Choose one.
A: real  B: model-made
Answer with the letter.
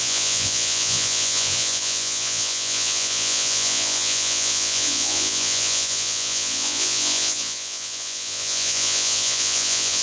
B